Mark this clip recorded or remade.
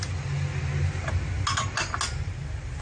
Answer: recorded